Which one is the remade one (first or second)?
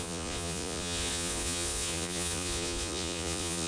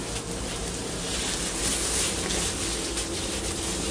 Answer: first